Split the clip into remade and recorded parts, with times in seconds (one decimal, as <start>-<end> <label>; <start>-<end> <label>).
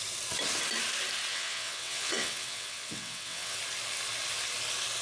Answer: 0.0-1.3 recorded; 1.3-3.6 remade; 3.6-5.0 recorded